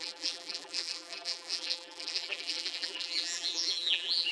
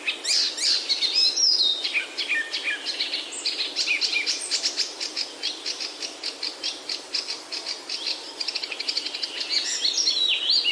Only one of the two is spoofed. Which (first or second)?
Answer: first